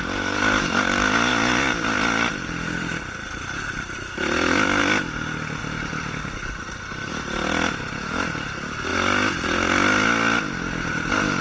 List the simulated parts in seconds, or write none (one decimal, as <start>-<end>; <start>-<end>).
1.3-4.8; 5.6-7.1

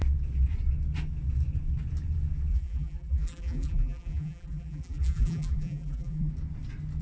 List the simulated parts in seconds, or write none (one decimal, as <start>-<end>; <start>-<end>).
2.5-6.3

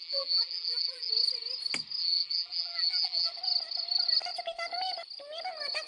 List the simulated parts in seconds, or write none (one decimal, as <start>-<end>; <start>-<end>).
0.0-1.1; 2.0-3.3

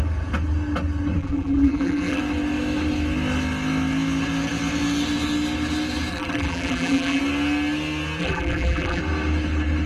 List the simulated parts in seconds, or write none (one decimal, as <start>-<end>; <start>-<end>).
1.2-2.2; 6.1-7.2; 8.2-9.0

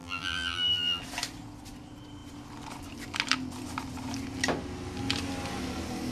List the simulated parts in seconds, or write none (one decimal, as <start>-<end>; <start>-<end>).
0.0-1.0

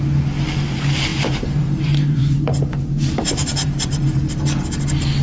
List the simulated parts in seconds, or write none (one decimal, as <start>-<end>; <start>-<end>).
1.1-4.2